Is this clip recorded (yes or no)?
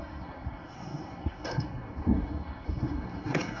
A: no